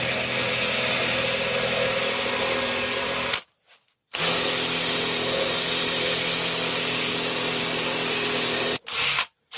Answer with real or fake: real